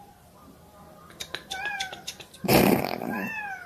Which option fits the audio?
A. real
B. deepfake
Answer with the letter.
B